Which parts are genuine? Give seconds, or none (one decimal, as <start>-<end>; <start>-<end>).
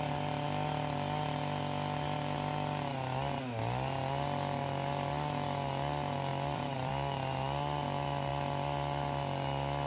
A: 0.0-6.3; 6.9-9.9